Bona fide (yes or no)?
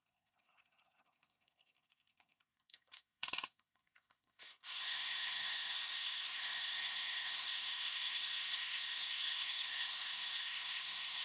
no